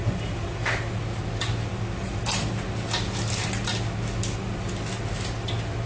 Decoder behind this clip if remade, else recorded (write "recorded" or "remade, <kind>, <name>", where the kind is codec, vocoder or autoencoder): recorded